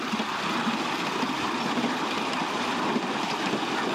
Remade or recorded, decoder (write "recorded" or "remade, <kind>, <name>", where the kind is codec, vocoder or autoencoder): recorded